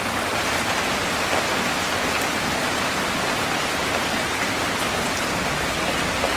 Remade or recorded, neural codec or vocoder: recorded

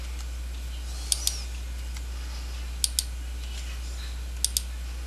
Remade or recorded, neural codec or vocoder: recorded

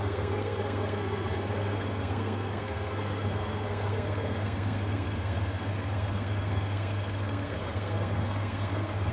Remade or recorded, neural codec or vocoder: remade, codec, SNAC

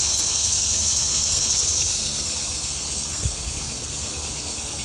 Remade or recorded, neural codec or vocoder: remade, codec, SNAC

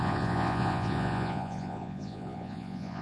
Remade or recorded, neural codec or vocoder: remade, vocoder, Vocos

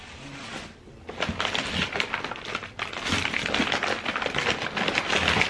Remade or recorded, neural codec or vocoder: recorded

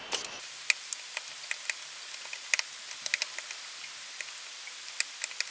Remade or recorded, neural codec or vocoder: recorded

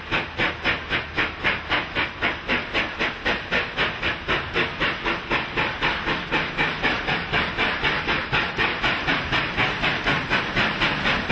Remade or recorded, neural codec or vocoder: recorded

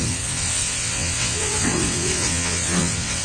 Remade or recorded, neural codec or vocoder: remade, vocoder, WaveNeXt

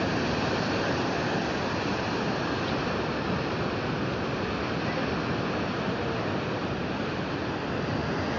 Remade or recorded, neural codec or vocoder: recorded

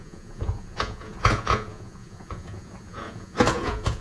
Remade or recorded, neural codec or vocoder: remade, vocoder, Vocos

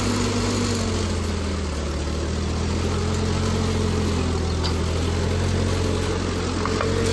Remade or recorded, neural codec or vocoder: recorded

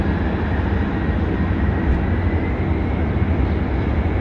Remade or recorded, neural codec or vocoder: recorded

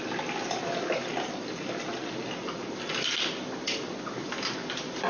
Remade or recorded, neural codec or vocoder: recorded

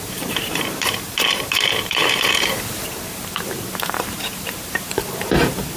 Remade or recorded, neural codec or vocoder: remade, vocoder, BigVGAN v2